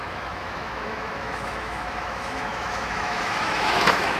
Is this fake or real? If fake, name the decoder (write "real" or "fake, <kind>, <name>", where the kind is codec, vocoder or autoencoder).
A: fake, autoencoder, DAC-VAE